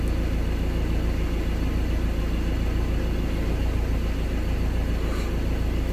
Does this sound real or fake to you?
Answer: real